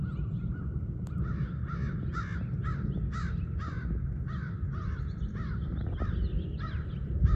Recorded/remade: recorded